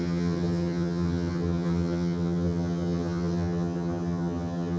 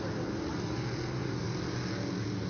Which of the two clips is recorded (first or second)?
second